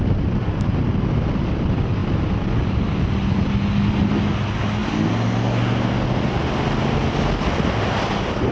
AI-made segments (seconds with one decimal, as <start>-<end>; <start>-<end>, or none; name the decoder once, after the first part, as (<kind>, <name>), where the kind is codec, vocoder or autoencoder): none